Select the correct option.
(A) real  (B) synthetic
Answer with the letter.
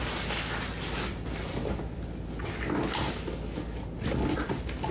A